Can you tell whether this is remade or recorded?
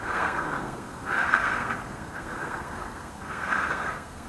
remade